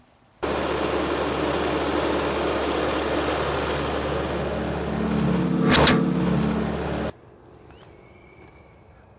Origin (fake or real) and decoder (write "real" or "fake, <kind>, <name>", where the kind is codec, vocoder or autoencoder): real